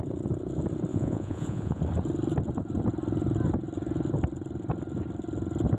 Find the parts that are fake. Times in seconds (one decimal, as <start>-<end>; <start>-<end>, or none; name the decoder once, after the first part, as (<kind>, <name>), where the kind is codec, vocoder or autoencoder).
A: 0.9-1.8 (vocoder, Vocos)